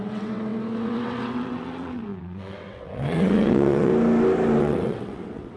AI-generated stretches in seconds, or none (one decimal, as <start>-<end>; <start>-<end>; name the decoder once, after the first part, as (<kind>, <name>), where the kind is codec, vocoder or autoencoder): 0.0-3.9 (vocoder, WaveNeXt); 4.6-5.6